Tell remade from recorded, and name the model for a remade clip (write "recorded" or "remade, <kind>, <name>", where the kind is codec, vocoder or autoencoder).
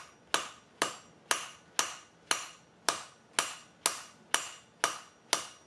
recorded